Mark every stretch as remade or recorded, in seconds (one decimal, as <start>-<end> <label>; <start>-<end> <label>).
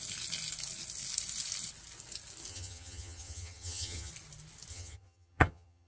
0.0-2.5 recorded; 2.5-4.1 remade; 4.1-4.7 recorded; 4.7-5.9 remade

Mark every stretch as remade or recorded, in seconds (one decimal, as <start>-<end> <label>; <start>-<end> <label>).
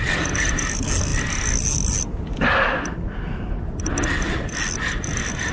0.0-5.5 recorded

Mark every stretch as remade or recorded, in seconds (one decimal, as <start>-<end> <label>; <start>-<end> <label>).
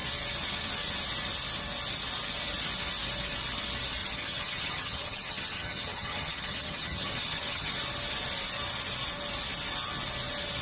0.0-4.0 recorded; 4.0-7.7 remade; 7.7-10.6 recorded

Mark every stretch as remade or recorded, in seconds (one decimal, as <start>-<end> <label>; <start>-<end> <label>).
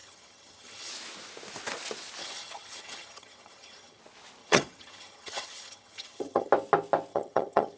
0.0-0.9 remade; 0.9-2.2 recorded; 2.2-4.0 remade; 4.0-4.4 recorded; 4.4-6.5 remade; 6.5-7.1 recorded; 7.1-7.8 remade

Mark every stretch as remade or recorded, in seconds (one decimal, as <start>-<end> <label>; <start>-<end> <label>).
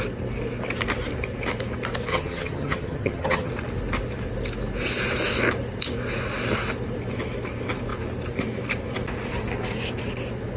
0.0-2.1 recorded; 2.1-3.5 remade; 3.5-10.6 recorded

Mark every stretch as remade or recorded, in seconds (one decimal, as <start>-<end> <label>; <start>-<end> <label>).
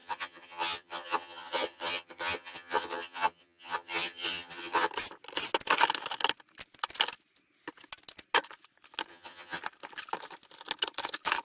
0.0-4.9 remade; 4.9-9.1 recorded; 9.1-9.6 remade; 9.6-11.4 recorded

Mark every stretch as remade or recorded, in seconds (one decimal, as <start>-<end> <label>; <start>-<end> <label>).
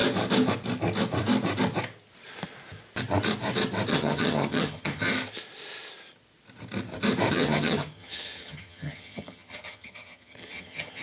0.0-3.9 recorded; 3.9-5.1 remade; 5.1-7.3 recorded; 7.3-11.0 remade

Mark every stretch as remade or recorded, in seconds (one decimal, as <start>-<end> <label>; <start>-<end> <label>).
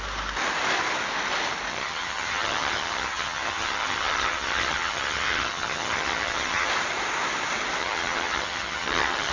0.0-1.7 recorded; 1.7-6.7 remade; 6.7-7.8 recorded; 7.8-9.3 remade